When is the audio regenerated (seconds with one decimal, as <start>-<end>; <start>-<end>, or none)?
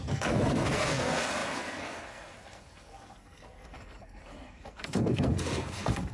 0.0-6.1